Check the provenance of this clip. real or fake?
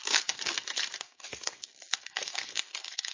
fake